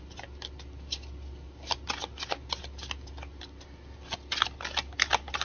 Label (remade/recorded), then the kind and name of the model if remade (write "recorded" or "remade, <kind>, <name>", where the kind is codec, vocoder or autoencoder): recorded